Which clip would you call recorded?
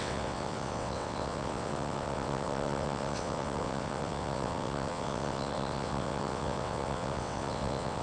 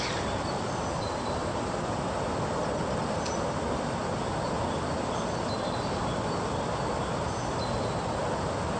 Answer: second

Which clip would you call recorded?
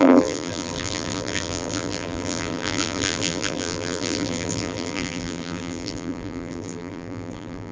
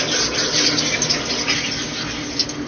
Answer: second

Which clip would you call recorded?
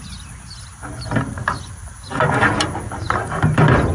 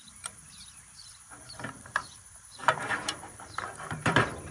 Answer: first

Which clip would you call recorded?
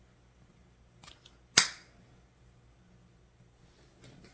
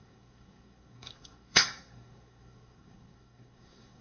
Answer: first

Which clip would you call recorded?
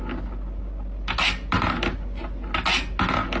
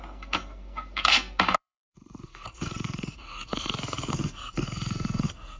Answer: first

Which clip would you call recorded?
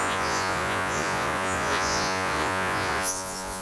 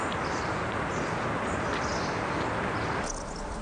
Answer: second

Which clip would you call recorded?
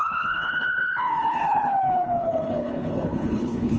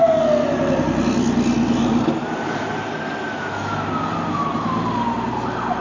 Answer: second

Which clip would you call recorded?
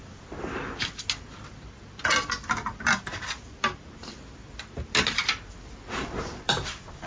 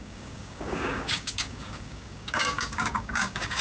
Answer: first